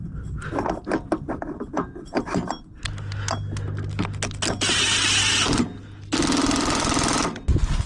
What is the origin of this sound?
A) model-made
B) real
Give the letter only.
B